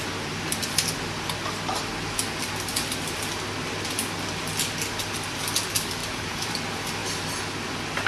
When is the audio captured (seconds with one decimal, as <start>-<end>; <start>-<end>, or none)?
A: 0.0-6.0; 6.5-8.1